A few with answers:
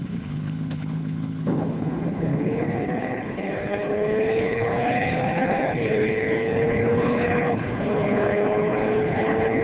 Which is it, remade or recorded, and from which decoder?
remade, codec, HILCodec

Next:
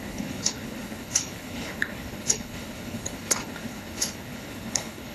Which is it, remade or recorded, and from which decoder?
remade, codec, HILCodec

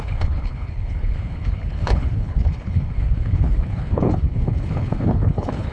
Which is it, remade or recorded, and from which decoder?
remade, codec, HILCodec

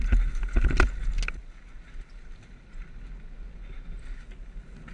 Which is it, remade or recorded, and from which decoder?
recorded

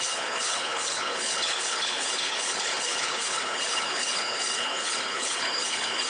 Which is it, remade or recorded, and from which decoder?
remade, codec, HILCodec